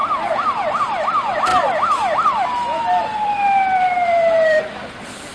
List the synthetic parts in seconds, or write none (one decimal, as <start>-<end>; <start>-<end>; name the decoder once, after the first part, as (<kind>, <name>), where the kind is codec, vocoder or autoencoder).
0.0-0.8 (vocoder, BigVGAN v2); 1.5-4.7